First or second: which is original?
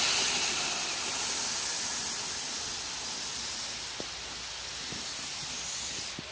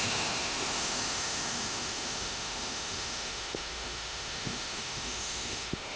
first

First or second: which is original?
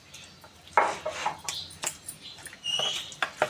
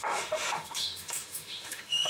first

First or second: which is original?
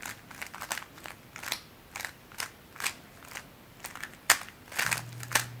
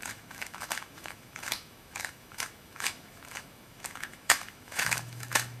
first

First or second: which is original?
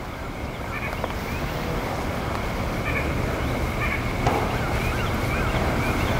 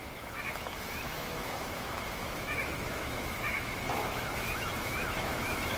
first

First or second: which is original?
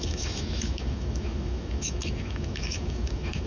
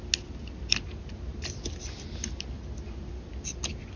second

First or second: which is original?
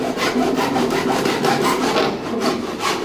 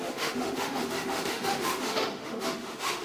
first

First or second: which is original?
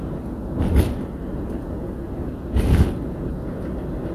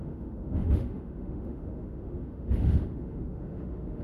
first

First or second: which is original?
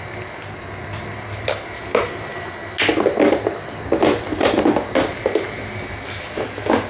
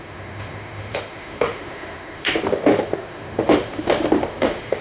first